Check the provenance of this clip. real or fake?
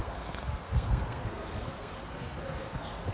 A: fake